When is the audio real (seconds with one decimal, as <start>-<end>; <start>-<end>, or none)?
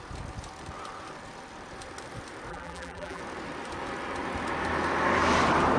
0.0-2.5; 3.2-5.8